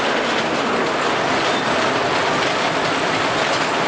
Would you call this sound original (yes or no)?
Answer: yes